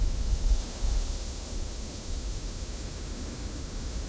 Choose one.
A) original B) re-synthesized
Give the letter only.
B